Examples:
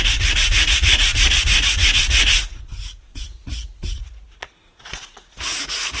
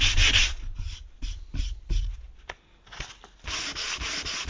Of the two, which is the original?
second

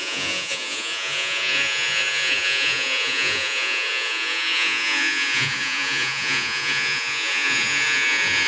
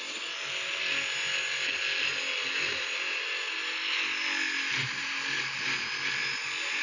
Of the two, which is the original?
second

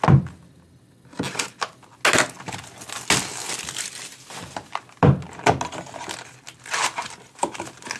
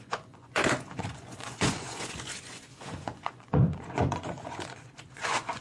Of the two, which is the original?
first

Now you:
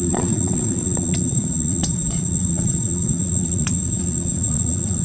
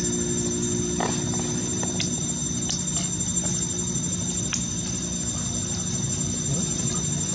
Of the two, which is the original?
second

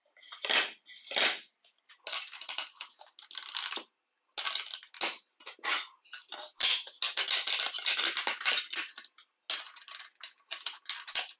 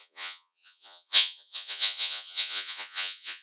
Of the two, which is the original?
first